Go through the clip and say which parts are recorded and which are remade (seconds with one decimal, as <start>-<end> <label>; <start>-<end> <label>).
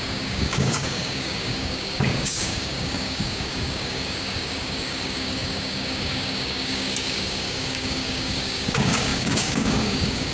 0.0-10.3 remade